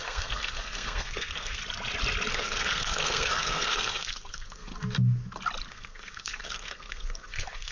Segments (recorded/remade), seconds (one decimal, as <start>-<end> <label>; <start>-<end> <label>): 0.0-1.6 remade; 1.6-2.3 recorded; 2.3-4.7 remade; 4.7-5.7 recorded; 5.7-7.7 remade

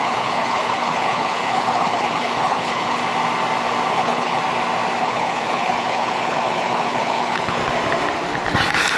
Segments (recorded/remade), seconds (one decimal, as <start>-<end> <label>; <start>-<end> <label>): 0.0-3.0 remade; 3.0-3.9 recorded; 3.9-4.4 remade; 4.4-5.0 recorded; 5.0-7.6 remade; 7.6-9.0 recorded

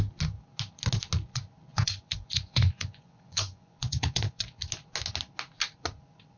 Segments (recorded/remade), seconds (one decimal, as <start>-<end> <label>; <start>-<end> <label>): 0.0-1.7 recorded; 1.7-4.6 remade; 4.6-6.4 recorded

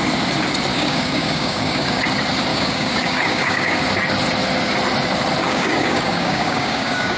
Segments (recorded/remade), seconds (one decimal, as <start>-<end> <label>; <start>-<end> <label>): 0.0-0.7 recorded; 0.7-2.0 remade; 2.0-2.5 recorded; 2.5-3.8 remade; 3.8-5.4 recorded; 5.4-7.2 remade

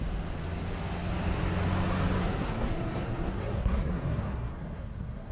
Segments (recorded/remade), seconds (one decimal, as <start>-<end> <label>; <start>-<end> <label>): 0.0-2.2 recorded; 2.2-5.3 remade